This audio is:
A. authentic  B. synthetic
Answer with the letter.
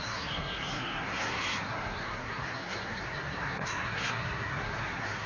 B